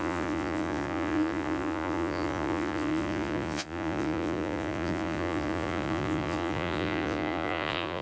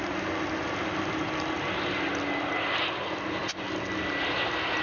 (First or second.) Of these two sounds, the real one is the second